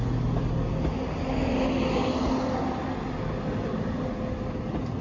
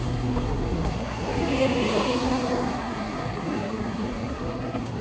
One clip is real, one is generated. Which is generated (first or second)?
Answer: second